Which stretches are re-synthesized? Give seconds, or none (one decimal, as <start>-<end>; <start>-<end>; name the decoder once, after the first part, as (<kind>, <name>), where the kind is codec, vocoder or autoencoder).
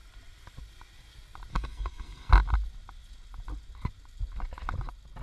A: 1.5-2.3 (codec, SNAC)